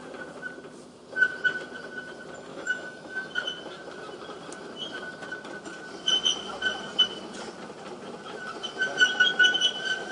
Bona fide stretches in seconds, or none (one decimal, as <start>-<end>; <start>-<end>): 0.0-2.5; 3.3-10.1